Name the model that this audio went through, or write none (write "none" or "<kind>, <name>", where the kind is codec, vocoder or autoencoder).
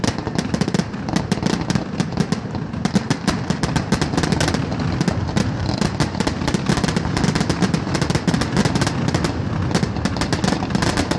none